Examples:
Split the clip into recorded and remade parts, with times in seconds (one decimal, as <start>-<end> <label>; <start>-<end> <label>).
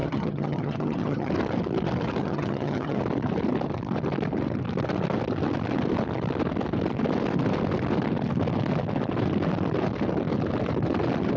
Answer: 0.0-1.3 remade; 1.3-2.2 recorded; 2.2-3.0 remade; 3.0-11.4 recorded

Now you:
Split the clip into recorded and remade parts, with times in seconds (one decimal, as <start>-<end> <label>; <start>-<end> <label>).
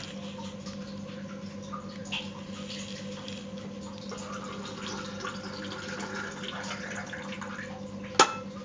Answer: 0.0-8.6 recorded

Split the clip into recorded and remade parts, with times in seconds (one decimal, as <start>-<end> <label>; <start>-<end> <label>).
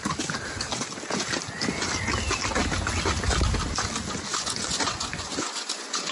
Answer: 0.0-4.3 recorded; 4.3-6.1 remade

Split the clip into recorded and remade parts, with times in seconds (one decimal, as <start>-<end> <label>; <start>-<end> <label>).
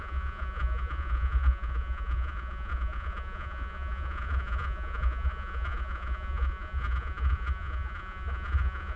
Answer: 0.0-9.0 remade